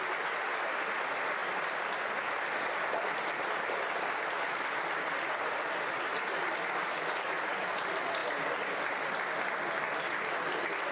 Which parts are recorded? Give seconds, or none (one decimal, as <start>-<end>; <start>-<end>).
0.0-10.9